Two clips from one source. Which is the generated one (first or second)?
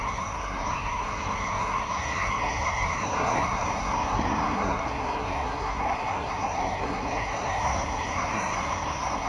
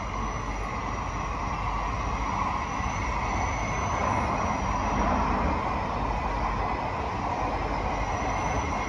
first